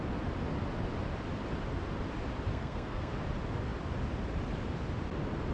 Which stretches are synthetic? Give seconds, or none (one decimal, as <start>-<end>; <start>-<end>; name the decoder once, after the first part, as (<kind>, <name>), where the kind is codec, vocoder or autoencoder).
2.5-3.1 (codec, SNAC)